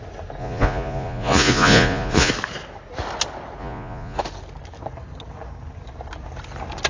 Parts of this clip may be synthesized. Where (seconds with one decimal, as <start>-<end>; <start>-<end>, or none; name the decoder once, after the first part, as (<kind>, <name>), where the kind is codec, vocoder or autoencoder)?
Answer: 0.4-2.3 (vocoder, Vocos); 3.6-4.2